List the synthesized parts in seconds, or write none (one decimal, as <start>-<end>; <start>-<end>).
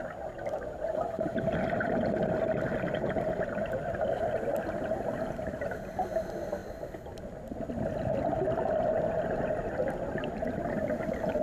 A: none